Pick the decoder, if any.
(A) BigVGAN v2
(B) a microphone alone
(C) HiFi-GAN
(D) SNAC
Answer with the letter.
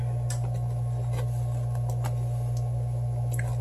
B